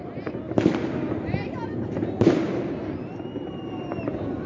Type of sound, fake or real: real